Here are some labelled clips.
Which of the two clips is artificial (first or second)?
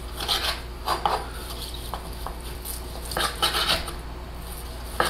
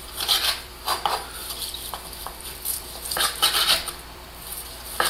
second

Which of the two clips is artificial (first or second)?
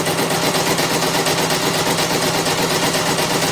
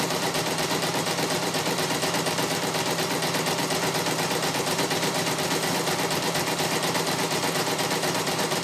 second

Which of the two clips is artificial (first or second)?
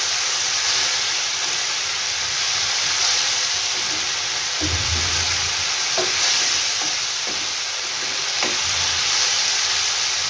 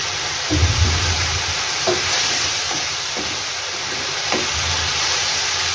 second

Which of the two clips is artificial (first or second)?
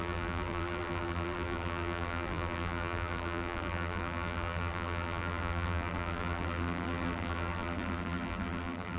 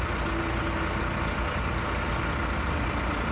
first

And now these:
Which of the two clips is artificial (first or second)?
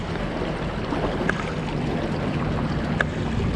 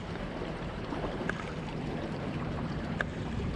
second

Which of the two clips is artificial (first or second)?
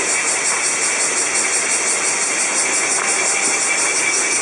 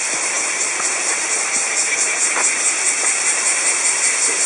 second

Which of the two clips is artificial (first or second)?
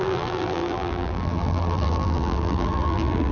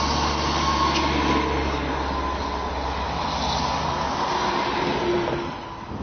first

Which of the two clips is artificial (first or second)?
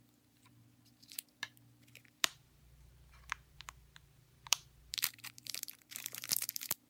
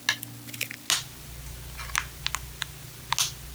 first